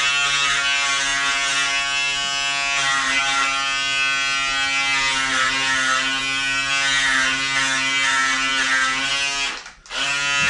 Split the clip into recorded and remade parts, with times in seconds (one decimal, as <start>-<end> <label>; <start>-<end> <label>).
0.0-10.5 recorded